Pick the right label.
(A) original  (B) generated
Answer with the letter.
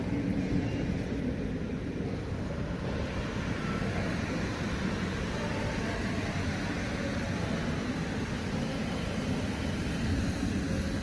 A